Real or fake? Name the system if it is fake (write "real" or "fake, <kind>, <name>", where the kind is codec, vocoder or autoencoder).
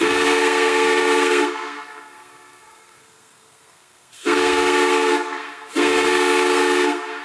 fake, codec, SNAC